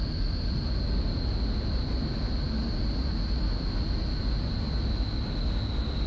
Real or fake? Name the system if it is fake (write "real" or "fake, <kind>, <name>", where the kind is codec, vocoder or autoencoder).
real